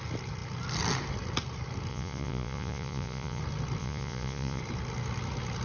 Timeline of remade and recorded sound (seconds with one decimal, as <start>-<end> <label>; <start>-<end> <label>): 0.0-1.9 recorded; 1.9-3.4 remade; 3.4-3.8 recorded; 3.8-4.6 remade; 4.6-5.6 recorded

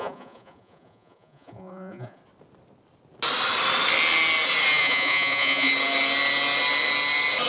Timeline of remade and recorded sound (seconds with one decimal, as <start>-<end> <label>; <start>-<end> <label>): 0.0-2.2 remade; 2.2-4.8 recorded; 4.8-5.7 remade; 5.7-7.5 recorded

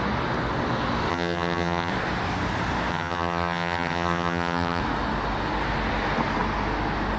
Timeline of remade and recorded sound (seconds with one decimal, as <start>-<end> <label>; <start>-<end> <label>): 0.0-1.1 recorded; 1.1-1.9 remade; 1.9-2.9 recorded; 2.9-4.8 remade; 4.8-7.2 recorded

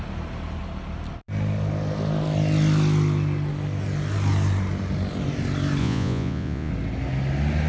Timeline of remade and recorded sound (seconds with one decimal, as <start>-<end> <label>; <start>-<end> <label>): 0.0-5.8 recorded; 5.8-6.7 remade; 6.7-7.7 recorded